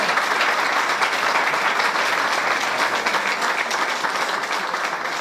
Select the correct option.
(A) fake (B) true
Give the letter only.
B